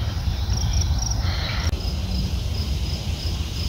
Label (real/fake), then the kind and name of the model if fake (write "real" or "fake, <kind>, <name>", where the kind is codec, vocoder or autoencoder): real